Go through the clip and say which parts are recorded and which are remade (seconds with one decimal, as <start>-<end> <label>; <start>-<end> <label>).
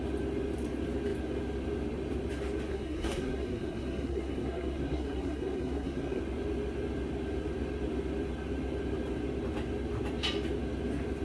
0.0-2.7 recorded; 2.7-6.2 remade; 6.2-11.2 recorded